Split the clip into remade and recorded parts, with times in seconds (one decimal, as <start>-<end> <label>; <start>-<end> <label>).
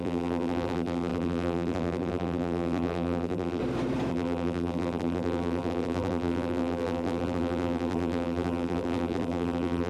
0.0-3.6 remade; 3.6-4.1 recorded; 4.1-9.9 remade